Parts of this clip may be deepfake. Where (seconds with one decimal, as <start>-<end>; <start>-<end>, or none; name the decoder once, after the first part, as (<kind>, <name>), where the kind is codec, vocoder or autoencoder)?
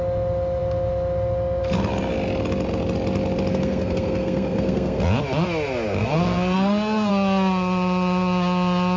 3.5-5.0 (codec, SNAC); 6.0-7.1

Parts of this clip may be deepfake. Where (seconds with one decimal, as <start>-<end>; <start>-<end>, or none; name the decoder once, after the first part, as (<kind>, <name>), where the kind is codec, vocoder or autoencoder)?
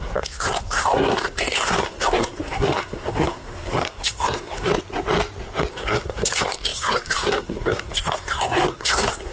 0.0-4.7 (codec, SNAC); 5.7-9.3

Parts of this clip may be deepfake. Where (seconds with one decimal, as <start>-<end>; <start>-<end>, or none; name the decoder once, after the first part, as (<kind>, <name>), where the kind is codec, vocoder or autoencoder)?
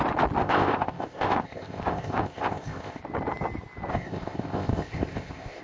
0.4-3.0 (codec, ZipCodec); 3.9-5.6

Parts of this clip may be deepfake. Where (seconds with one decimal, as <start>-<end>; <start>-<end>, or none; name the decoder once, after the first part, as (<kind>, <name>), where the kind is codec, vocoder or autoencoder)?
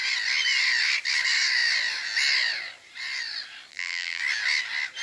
3.7-4.2 (vocoder, BigVGAN v2)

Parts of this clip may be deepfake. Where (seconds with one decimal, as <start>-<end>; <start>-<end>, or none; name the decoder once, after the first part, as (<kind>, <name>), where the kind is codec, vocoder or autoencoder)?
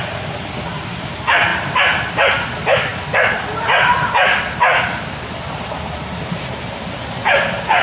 none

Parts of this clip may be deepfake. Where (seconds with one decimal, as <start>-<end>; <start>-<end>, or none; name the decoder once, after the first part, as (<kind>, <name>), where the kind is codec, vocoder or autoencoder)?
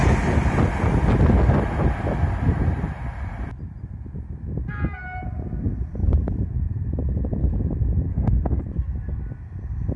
8.1-8.6 (autoencoder, DAC-VAE)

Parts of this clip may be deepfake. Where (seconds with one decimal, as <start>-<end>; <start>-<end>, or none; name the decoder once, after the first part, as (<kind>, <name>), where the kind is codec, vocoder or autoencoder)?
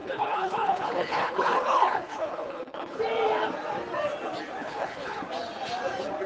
0.0-3.0 (codec, HILCodec); 4.6-5.2